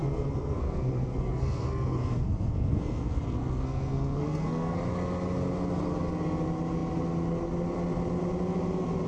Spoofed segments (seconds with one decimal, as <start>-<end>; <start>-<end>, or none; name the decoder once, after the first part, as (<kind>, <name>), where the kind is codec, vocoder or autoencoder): 0.0-4.8 (codec, SNAC)